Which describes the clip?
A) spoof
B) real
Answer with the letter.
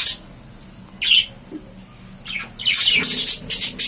B